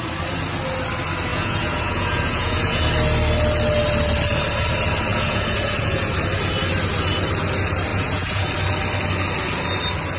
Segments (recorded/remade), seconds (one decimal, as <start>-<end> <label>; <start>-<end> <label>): 0.0-1.3 recorded; 1.3-2.8 remade; 2.8-5.1 recorded; 5.1-6.1 remade; 6.1-7.9 recorded; 7.9-8.5 remade; 8.5-10.2 recorded